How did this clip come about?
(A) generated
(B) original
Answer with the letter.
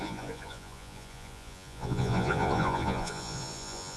A